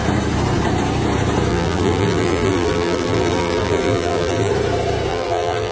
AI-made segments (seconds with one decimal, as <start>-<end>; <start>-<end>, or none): 1.5-4.5; 5.1-5.7